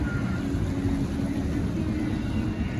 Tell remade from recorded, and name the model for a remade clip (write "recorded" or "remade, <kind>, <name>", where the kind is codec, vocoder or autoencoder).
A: recorded